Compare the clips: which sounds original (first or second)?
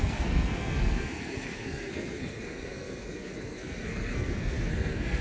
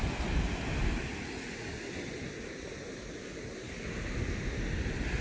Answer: second